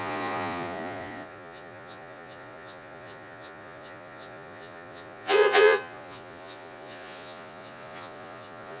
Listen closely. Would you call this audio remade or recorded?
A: remade